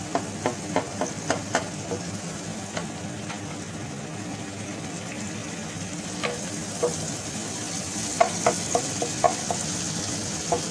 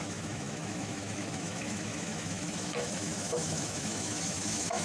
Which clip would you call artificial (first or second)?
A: second